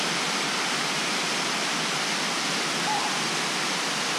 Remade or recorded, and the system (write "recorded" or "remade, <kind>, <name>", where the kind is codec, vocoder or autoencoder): recorded